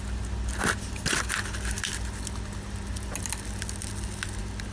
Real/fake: real